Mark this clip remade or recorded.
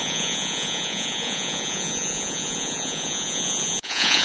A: remade